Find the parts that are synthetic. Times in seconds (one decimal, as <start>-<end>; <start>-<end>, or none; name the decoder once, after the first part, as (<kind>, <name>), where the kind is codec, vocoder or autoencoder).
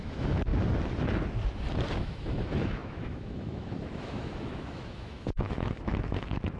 0.0-0.5 (autoencoder, DAC-VAE); 2.0-6.6